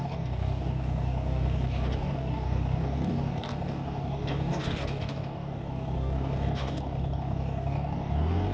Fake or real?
fake